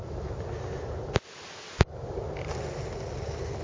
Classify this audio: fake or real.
real